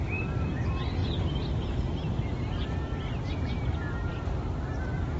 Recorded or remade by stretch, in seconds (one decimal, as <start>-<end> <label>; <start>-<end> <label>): 0.0-5.2 recorded